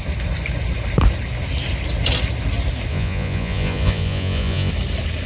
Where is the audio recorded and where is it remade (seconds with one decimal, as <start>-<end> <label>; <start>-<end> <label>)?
0.0-2.9 recorded; 2.9-4.7 remade; 4.7-5.3 recorded